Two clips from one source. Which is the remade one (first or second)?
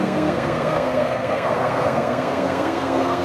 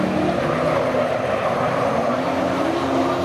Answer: first